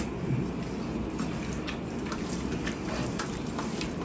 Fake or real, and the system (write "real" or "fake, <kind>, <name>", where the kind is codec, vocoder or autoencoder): real